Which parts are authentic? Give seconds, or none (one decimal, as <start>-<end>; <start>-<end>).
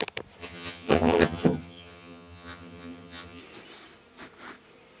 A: 0.0-0.4; 3.4-5.0